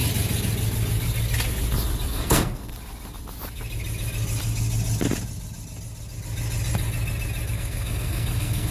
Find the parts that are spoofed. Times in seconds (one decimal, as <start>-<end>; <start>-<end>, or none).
2.1-2.7; 7.5-8.7